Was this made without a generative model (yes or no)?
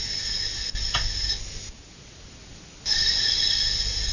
yes